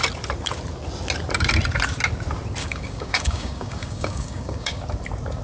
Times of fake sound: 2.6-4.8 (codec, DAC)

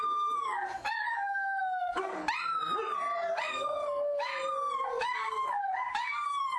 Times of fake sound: 0.0-2.2 (codec, DAC); 3.4-4.3; 5.0-6.6

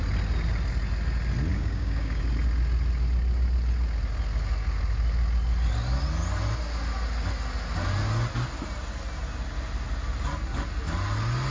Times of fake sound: 1.5-2.2 (codec, DAC)

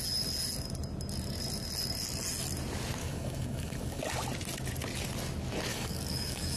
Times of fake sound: 3.0-4.0 (codec, DAC); 5.7-6.6

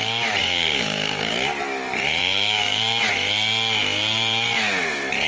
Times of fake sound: 0.4-1.3 (codec, DAC); 2.2-2.8

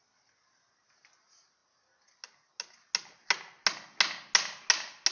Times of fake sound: none

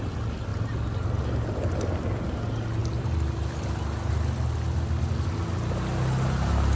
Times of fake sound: none